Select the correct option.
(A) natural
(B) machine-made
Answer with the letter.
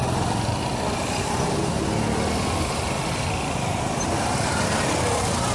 A